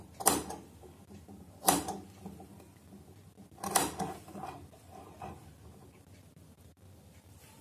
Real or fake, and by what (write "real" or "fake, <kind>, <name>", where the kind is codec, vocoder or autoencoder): real